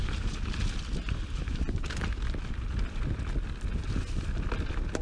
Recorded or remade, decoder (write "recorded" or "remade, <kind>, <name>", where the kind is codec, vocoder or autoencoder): recorded